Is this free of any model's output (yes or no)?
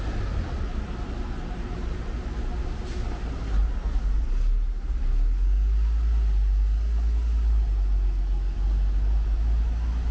yes